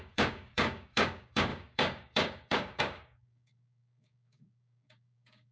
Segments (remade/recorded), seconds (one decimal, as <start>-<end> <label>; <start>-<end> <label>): 0.0-5.5 remade